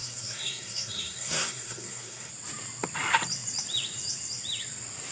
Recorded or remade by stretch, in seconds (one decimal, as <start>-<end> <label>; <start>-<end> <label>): 0.0-2.3 remade; 2.3-5.1 recorded